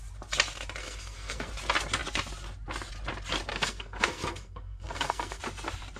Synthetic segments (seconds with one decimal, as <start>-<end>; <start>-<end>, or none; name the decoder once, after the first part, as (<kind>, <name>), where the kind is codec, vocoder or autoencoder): 0.8-1.5 (codec, SNAC); 3.5-5.4